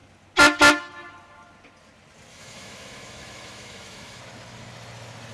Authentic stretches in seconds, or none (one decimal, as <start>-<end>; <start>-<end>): 0.0-2.3; 4.2-5.3